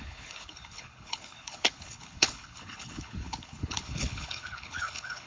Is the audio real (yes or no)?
no